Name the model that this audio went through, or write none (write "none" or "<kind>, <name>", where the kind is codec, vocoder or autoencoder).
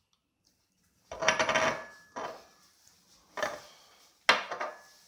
none